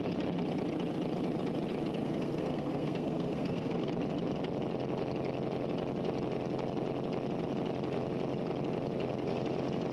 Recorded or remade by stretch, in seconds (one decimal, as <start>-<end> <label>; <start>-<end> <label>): 0.0-2.0 recorded; 2.0-3.9 remade; 3.9-9.9 recorded